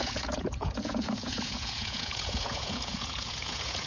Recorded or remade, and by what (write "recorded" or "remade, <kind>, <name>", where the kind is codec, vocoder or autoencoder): remade, vocoder, Vocos